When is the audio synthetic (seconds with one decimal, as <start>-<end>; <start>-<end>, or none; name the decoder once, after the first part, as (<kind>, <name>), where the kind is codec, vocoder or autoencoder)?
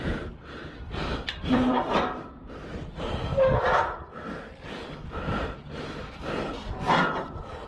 0.0-3.3 (vocoder, BigVGAN v2); 4.1-7.7